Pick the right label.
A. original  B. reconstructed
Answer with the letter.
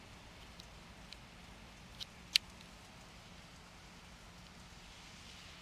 A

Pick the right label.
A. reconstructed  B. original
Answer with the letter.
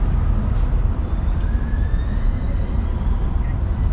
B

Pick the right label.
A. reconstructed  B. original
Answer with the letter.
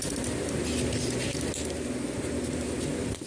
B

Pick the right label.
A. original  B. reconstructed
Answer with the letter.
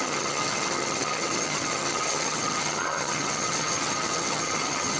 B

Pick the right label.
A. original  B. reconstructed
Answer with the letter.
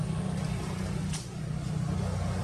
A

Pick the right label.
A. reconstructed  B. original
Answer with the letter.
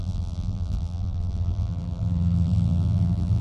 A